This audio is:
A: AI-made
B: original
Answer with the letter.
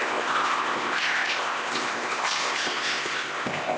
A